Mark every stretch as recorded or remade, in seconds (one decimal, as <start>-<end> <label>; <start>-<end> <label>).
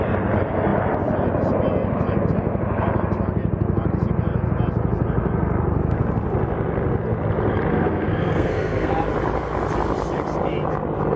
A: 0.0-7.7 recorded; 7.7-8.9 remade; 8.9-11.2 recorded